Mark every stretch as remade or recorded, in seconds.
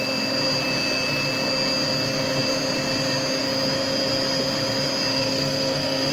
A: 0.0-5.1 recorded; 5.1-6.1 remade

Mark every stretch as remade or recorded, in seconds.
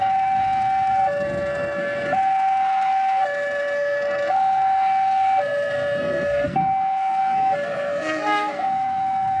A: 0.0-9.4 remade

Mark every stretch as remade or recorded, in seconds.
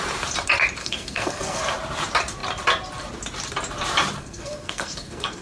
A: 0.0-0.8 recorded; 0.8-1.6 remade; 1.6-4.2 recorded; 4.2-5.4 remade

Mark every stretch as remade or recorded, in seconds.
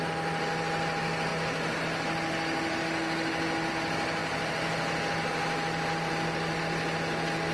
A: 0.0-7.5 recorded